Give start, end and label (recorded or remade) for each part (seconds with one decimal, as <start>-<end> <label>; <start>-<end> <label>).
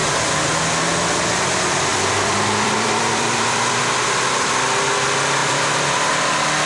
0.0-1.9 recorded; 1.9-3.8 remade; 3.8-5.4 recorded; 5.4-6.1 remade; 6.1-6.7 recorded